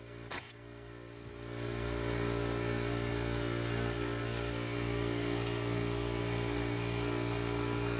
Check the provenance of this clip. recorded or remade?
remade